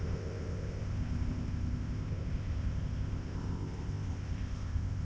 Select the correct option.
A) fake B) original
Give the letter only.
A